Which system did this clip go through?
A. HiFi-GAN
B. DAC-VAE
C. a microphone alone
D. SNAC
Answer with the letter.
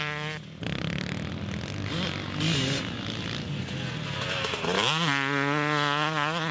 C